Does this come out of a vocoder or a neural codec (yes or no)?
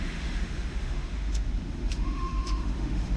yes